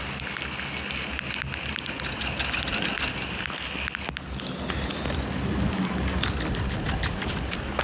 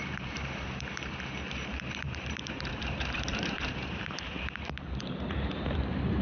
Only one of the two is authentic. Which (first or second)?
first